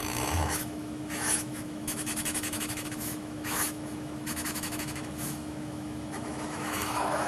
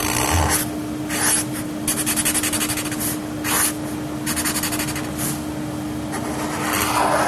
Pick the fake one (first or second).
first